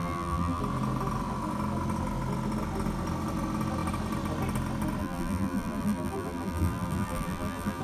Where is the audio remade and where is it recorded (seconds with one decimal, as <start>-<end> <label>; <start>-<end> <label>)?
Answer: 0.0-0.6 remade; 0.6-5.0 recorded; 5.0-7.8 remade